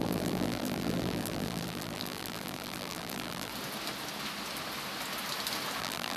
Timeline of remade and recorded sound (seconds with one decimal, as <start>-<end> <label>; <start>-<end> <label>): 0.0-3.5 remade; 3.5-5.8 recorded; 5.8-6.2 remade